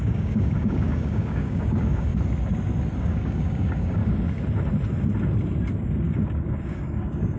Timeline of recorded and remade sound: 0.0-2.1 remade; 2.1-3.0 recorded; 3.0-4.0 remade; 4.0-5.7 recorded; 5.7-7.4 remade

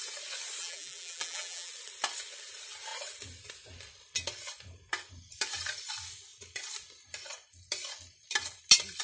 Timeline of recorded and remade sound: 0.0-0.6 recorded; 0.6-1.7 remade; 1.7-9.0 recorded

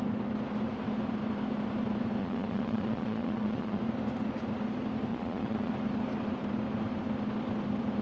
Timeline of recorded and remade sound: 0.0-2.2 recorded; 2.2-3.8 remade; 3.8-5.1 recorded; 5.1-5.7 remade; 5.7-8.0 recorded

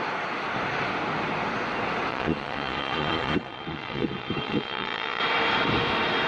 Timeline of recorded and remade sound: 0.0-2.1 recorded; 2.1-5.2 remade; 5.2-6.3 recorded

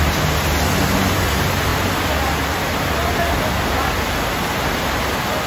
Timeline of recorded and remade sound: 0.0-5.5 recorded

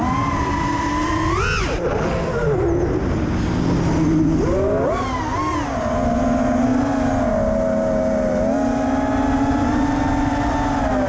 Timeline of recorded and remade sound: 0.0-11.1 recorded